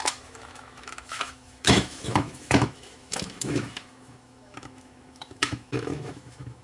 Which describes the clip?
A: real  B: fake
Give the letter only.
B